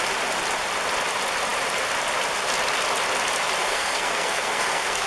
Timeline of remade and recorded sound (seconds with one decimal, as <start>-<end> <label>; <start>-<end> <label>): 0.0-3.6 recorded; 3.6-5.1 remade